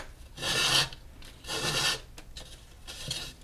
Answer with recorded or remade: recorded